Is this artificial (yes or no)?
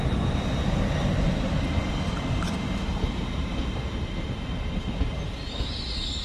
no